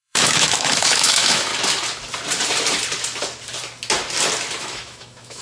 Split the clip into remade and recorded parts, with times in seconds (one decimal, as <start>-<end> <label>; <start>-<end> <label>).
0.0-1.5 remade; 1.5-4.6 recorded; 4.6-5.4 remade